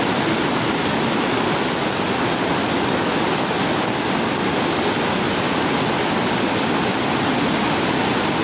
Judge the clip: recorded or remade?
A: recorded